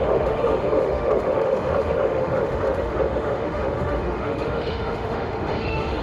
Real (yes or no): no